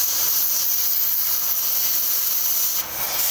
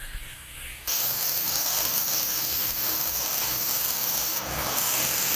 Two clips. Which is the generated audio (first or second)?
second